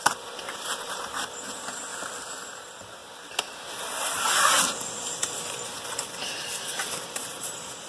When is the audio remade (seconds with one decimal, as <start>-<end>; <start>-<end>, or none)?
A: 0.0-1.9; 2.5-3.0; 6.4-7.9